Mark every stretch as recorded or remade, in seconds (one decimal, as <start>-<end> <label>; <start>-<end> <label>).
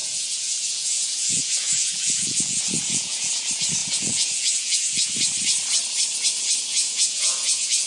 0.0-3.3 remade; 3.3-3.8 recorded; 3.8-5.1 remade; 5.1-6.7 recorded; 6.7-7.9 remade